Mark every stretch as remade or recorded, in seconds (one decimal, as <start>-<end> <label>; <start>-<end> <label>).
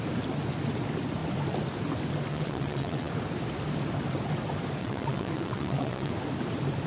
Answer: 0.0-2.3 recorded; 2.3-3.1 remade; 3.1-4.8 recorded; 4.8-6.1 remade; 6.1-6.9 recorded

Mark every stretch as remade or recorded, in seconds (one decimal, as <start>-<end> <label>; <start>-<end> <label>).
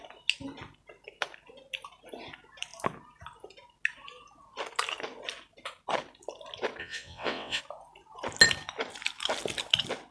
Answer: 0.0-6.8 recorded; 6.8-7.6 remade; 7.6-10.1 recorded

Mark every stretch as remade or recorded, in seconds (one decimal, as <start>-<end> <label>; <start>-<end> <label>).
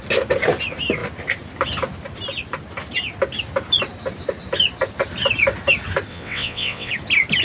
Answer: 0.0-6.1 recorded; 6.1-6.9 remade; 6.9-7.4 recorded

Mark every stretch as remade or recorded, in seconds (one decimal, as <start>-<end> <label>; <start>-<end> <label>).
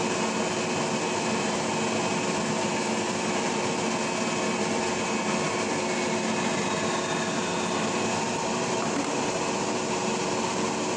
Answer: 0.0-11.0 recorded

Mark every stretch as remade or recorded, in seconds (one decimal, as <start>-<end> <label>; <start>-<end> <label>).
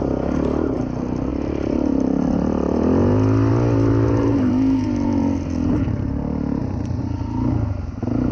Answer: 0.0-8.3 recorded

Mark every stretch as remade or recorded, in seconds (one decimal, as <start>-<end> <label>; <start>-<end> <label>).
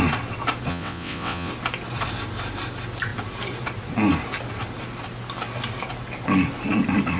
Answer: 0.0-0.7 recorded; 0.7-1.5 remade; 1.5-7.2 recorded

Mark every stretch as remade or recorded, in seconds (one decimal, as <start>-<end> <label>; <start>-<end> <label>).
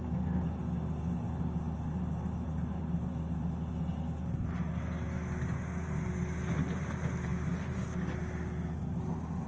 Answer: 0.0-9.5 recorded